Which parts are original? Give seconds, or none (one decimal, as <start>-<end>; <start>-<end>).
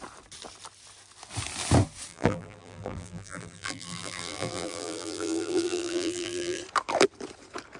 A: 0.0-2.1; 6.6-7.8